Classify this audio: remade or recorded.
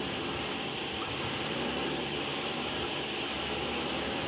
recorded